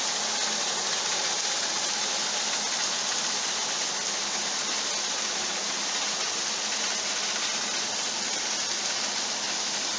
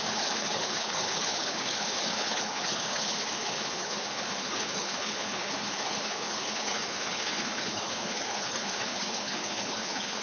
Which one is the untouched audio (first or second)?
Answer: first